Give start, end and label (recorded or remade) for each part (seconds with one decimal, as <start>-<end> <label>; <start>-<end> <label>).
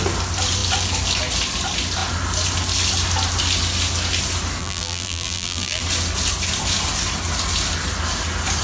0.0-4.6 recorded; 4.6-5.8 remade; 5.8-8.6 recorded